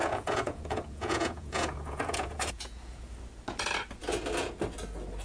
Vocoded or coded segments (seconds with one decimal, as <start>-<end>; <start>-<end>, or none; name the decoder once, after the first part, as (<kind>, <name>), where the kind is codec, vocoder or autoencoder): 0.0-3.1 (vocoder, Vocos)